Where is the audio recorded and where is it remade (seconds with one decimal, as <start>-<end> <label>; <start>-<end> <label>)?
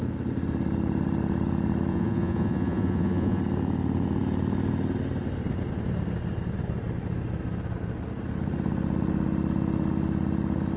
0.0-1.9 recorded; 1.9-3.4 remade; 3.4-10.8 recorded